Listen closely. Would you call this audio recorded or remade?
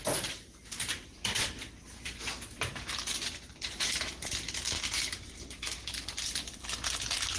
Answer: remade